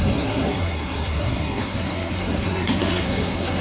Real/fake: fake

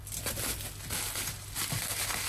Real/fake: real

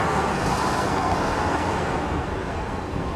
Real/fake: fake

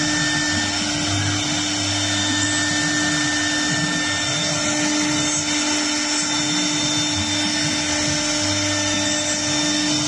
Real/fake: real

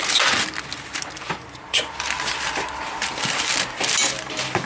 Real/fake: real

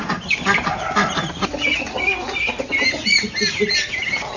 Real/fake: fake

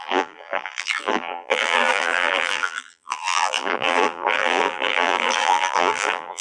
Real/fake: fake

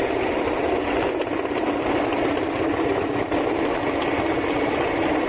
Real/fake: real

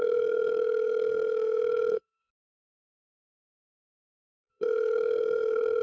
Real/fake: fake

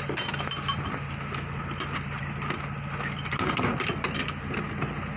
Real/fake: real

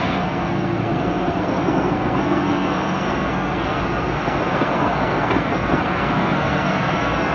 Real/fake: fake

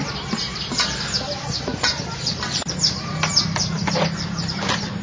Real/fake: real